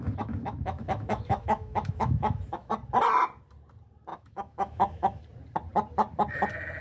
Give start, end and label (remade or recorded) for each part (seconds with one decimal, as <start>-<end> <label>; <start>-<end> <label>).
0.0-2.7 remade; 2.7-4.1 recorded; 4.1-5.2 remade; 5.2-6.8 recorded